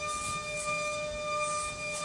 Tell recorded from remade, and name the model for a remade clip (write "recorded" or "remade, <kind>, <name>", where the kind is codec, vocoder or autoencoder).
recorded